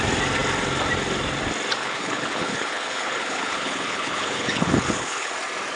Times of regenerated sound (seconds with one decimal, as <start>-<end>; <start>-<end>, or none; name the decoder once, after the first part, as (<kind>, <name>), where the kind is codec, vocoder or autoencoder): 1.8-5.3 (codec, HILCodec)